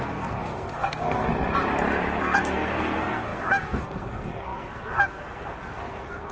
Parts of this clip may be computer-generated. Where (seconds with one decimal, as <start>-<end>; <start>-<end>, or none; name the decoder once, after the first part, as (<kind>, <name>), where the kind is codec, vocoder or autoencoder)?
0.0-1.3 (codec, SNAC); 2.2-6.3